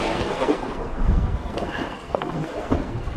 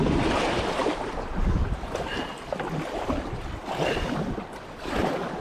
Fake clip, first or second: first